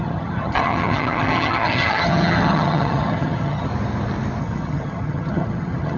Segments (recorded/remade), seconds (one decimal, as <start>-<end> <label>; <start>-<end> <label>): 0.0-3.7 remade; 3.7-4.4 recorded; 4.4-6.0 remade